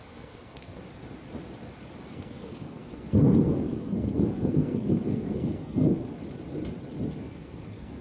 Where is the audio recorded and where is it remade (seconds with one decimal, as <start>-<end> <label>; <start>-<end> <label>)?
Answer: 0.0-0.8 remade; 0.8-2.1 recorded; 2.1-6.2 remade; 6.2-7.2 recorded; 7.2-8.0 remade